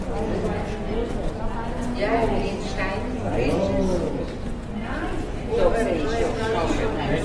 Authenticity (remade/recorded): recorded